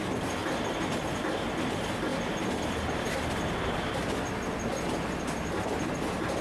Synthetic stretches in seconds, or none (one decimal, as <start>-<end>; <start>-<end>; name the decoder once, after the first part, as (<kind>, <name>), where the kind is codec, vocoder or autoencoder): 0.4-1.1 (vocoder, BigVGAN v2)